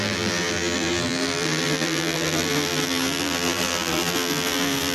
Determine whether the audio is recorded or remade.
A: remade